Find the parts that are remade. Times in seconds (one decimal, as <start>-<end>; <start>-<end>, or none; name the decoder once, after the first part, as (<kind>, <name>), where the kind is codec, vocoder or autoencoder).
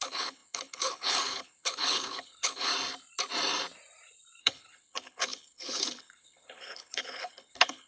0.0-2.7 (codec, HILCodec); 4.4-7.9